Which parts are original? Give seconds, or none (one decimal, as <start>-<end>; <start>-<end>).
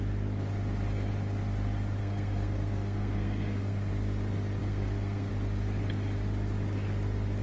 0.0-2.0; 3.9-4.6; 5.3-7.4